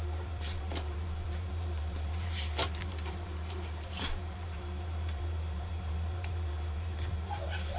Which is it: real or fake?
fake